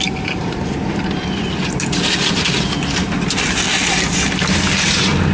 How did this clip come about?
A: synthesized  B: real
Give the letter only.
B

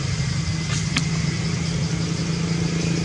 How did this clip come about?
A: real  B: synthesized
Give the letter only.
A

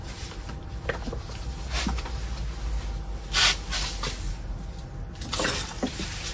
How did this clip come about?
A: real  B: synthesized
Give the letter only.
A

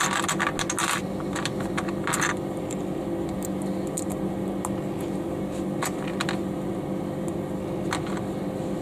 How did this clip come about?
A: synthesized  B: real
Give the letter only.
B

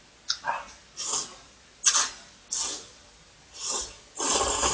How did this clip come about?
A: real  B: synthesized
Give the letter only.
A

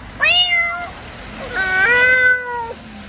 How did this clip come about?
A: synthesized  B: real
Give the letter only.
B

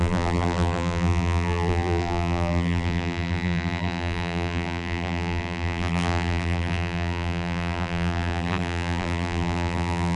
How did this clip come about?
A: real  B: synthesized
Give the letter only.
B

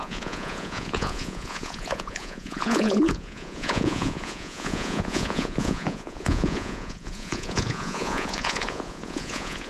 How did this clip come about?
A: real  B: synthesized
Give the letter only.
B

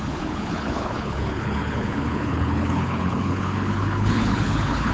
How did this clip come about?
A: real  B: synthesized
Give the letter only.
B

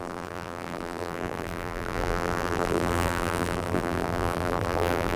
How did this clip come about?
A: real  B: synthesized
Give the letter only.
B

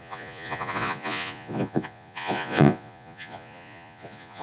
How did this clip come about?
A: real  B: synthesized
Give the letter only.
B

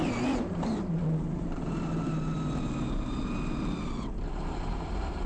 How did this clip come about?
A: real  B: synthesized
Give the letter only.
B